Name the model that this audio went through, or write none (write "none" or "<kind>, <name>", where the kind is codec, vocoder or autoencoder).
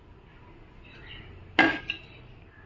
none